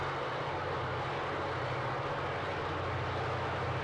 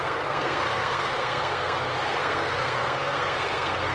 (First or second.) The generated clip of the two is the second